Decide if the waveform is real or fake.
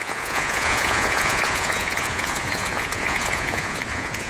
fake